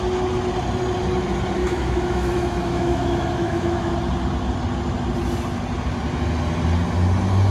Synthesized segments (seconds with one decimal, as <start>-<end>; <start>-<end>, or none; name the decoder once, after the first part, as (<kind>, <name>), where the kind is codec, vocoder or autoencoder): 1.6-3.9 (autoencoder, DAC-VAE)